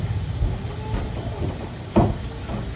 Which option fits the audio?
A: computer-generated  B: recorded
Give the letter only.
B